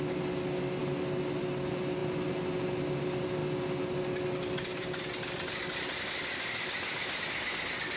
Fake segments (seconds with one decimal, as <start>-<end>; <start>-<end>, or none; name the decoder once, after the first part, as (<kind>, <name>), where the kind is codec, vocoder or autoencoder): none